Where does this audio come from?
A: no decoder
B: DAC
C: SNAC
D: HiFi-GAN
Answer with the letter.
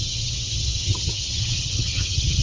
D